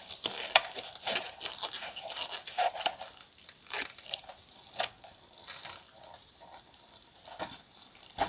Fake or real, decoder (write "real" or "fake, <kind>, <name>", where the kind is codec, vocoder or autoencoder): fake, vocoder, BigVGAN v2